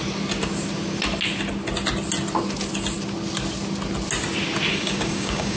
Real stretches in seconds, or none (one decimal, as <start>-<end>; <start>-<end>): 0.0-4.7